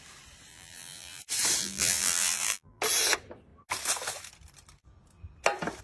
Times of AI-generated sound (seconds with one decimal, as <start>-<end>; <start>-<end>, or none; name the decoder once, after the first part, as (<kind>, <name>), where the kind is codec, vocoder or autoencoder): 0.5-1.2 (vocoder, BigVGAN v2); 1.6-2.8